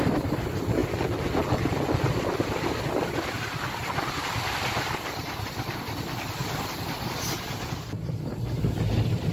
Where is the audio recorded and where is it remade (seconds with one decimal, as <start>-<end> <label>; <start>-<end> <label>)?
0.0-9.3 recorded